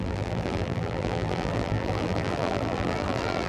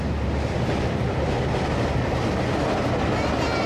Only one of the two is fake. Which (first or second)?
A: first